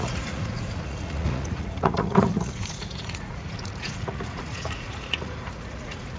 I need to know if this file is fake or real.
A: fake